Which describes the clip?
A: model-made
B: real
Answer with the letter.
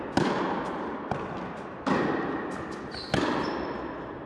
B